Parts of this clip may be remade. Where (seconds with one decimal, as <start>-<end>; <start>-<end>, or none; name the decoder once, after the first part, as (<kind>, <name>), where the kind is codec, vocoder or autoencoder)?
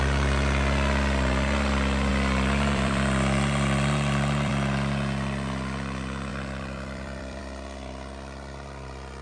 2.1-4.5 (vocoder, BigVGAN v2); 6.3-7.4